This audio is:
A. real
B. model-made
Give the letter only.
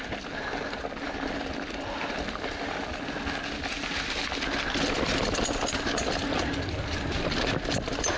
A